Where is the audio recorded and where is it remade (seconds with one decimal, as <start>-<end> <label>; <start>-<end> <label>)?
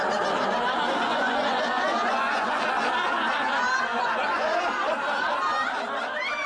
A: 0.0-1.1 recorded; 1.1-2.7 remade; 2.7-3.9 recorded; 3.9-4.6 remade; 4.6-6.5 recorded